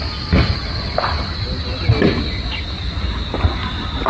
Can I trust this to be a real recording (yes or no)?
yes